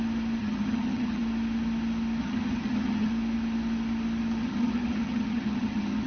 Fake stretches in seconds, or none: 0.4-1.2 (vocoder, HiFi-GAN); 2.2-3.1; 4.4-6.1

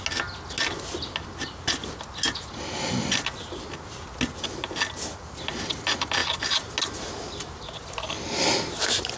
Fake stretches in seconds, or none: none

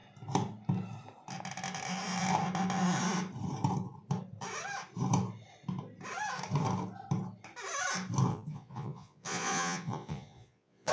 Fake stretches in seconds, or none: 8.3-10.9 (vocoder, Vocos)

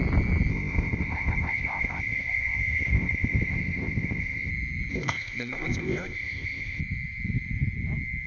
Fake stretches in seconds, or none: 0.5-4.5 (codec, ZipCodec); 4.9-6.8

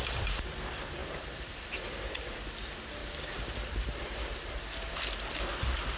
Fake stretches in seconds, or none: 1.0-1.9 (vocoder, BigVGAN v2); 3.0-4.6

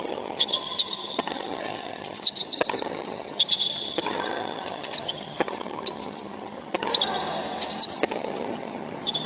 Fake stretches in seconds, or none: 0.0-6.9 (vocoder, HiFi-GAN); 7.8-9.3

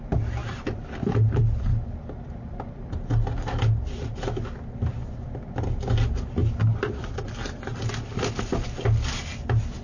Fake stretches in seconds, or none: none